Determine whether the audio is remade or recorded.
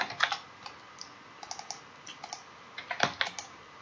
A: recorded